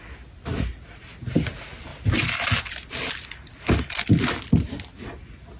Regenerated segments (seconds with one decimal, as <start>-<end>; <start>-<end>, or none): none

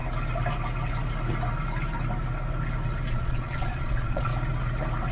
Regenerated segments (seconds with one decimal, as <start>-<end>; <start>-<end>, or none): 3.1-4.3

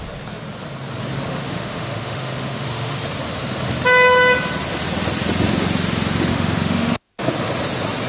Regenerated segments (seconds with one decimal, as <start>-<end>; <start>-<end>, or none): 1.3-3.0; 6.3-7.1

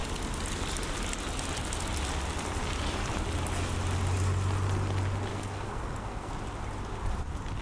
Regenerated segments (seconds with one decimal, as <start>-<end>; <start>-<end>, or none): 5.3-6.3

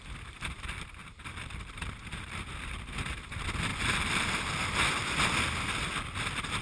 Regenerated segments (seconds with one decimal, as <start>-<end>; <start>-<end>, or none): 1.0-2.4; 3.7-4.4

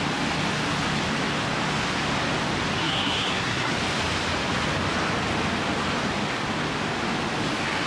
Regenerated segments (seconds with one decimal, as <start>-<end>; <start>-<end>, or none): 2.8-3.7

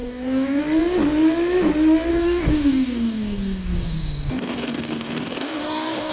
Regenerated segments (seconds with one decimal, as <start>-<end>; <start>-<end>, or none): 0.0-0.6; 2.1-6.1

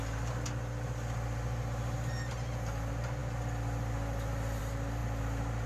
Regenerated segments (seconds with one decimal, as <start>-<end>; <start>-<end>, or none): 0.0-3.2; 4.6-5.0